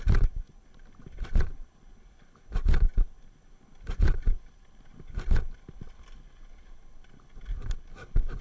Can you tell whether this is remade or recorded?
recorded